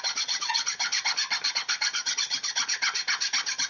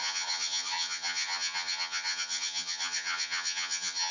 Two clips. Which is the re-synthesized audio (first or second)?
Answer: second